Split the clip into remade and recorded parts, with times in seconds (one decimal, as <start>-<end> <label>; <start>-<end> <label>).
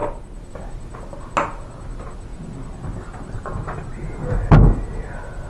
0.0-5.5 recorded